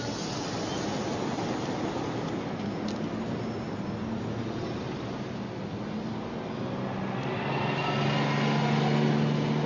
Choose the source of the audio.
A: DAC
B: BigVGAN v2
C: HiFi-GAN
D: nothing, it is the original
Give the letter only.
D